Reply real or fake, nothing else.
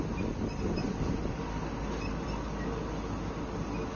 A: real